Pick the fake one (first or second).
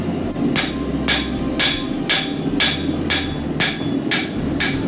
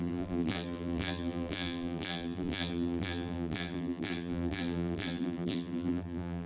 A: second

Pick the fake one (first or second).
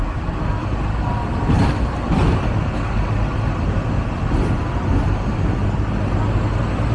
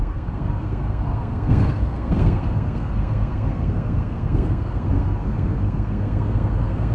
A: second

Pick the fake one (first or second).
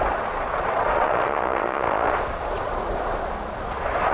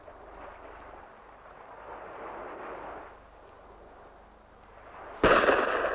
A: first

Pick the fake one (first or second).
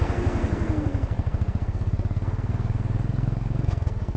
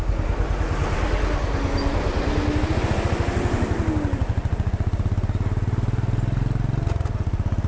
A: first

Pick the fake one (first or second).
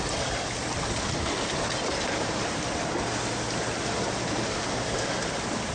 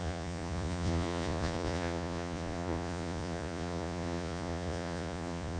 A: second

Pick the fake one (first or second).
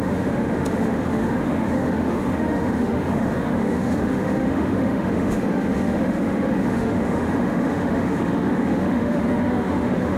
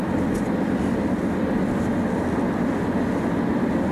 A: first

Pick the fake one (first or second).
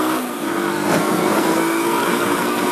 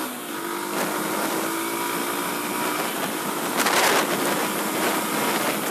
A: first